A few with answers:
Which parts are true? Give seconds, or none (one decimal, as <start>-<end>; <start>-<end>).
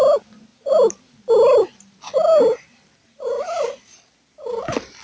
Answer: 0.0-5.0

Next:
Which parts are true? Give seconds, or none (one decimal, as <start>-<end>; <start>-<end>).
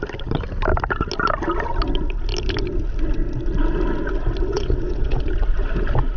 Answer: 0.0-4.5; 5.2-6.2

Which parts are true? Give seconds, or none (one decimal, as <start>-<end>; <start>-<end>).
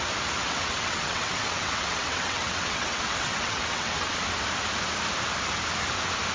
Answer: 0.0-0.4; 4.2-6.3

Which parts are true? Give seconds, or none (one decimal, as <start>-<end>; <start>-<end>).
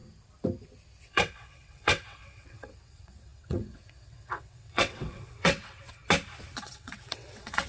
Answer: 0.0-1.0; 6.0-6.6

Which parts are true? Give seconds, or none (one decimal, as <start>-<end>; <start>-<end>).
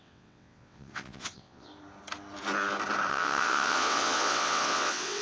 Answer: 1.7-3.1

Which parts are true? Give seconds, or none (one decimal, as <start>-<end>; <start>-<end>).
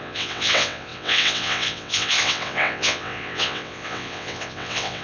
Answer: none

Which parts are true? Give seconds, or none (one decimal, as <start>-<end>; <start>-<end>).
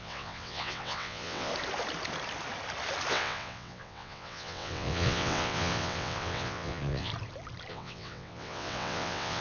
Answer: 1.5-3.1; 7.1-7.7